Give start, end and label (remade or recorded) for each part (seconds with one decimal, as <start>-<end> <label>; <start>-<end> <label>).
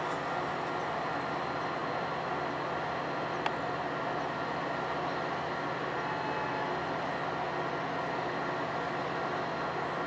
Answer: 0.0-10.1 recorded